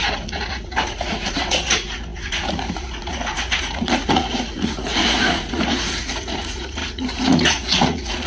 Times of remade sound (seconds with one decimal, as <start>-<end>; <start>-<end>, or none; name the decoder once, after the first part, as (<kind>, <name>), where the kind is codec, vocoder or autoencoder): 0.0-8.3 (vocoder, Vocos)